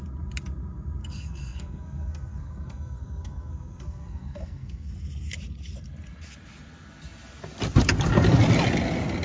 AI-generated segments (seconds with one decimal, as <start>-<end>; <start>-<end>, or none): 1.0-4.9